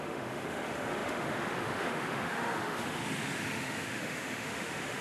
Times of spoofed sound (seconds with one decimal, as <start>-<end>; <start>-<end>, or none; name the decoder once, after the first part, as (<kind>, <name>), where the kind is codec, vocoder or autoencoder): 0.0-5.0 (autoencoder, DAC-VAE)